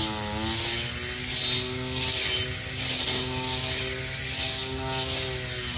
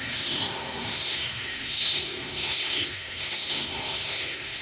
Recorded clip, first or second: first